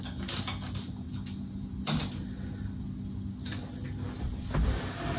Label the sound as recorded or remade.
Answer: recorded